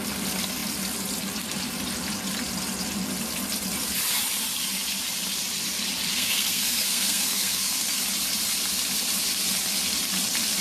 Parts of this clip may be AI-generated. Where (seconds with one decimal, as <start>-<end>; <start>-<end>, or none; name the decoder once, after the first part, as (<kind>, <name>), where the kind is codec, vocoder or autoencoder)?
6.1-8.0 (codec, SNAC)